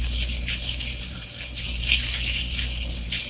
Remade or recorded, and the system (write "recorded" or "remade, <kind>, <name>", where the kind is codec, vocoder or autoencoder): recorded